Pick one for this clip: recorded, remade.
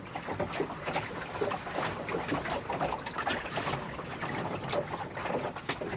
recorded